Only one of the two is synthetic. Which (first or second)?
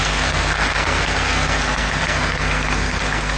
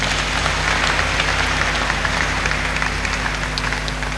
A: first